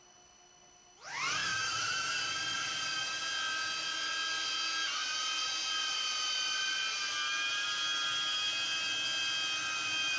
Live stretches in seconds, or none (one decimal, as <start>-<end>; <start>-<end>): 0.0-1.4; 2.1-10.2